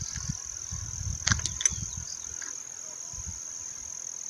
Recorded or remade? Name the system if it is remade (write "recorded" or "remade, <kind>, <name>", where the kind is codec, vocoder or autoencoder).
recorded